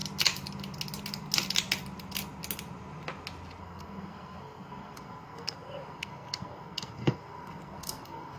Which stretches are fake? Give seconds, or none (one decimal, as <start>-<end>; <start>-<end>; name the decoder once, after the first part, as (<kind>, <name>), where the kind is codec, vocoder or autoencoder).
3.6-8.4 (codec, SNAC)